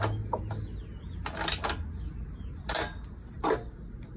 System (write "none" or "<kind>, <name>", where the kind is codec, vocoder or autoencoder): none